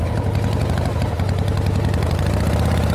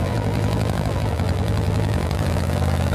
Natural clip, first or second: first